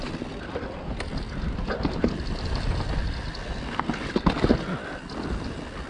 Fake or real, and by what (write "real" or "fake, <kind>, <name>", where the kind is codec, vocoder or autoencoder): real